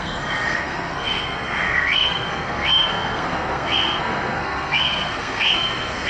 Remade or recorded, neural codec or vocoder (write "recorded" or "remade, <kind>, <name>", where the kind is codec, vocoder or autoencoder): remade, codec, SNAC